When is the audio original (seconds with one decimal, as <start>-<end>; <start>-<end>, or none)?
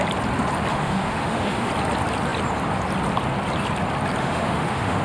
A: 0.0-0.7; 1.7-4.2